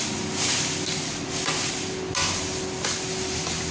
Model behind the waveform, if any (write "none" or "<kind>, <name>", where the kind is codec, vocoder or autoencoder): none